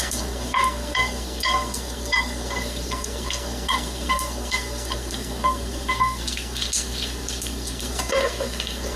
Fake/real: fake